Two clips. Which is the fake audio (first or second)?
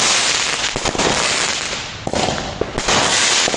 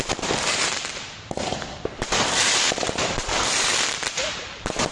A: second